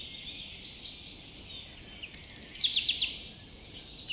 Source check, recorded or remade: recorded